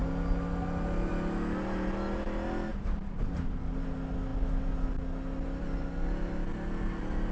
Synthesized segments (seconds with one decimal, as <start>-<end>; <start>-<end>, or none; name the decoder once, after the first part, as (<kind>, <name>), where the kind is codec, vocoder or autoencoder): 2.7-3.5 (vocoder, BigVGAN v2)